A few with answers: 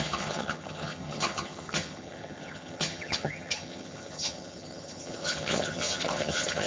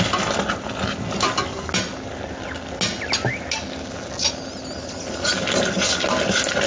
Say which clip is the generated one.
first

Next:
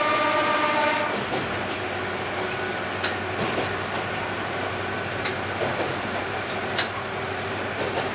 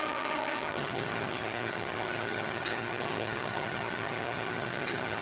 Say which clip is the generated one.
second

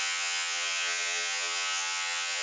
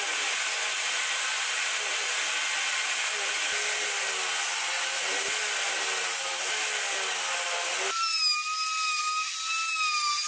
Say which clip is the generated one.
first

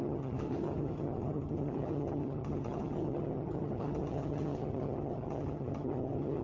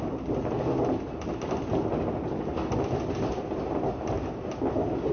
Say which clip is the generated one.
first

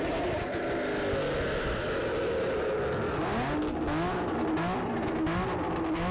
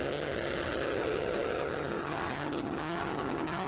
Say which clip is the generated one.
second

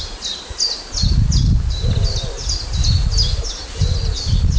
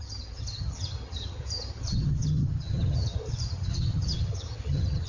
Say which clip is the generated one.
second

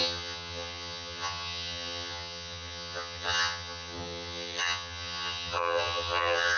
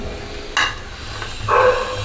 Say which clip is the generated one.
first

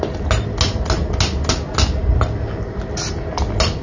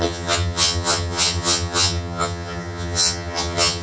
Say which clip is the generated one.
second